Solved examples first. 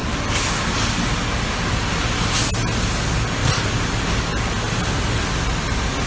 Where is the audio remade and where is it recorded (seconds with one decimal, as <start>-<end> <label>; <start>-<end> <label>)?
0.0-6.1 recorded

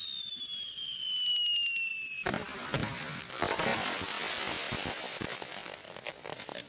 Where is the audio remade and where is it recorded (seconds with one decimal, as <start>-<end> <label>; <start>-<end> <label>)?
0.0-6.7 recorded

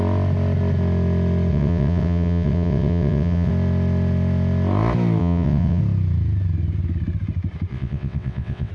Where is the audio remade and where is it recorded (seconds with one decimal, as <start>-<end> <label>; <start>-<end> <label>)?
0.0-1.5 recorded; 1.5-3.5 remade; 3.5-5.2 recorded; 5.2-5.8 remade; 5.8-7.7 recorded; 7.7-8.7 remade

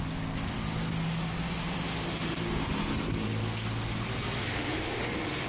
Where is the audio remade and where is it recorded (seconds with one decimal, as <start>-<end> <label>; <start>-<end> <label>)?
0.0-1.6 recorded; 1.6-2.4 remade; 2.4-4.4 recorded; 4.4-5.1 remade; 5.1-5.5 recorded